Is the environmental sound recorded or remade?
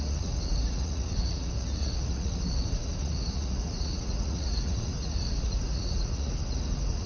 remade